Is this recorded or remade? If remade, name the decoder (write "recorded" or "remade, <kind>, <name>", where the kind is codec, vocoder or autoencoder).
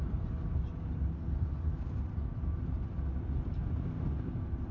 recorded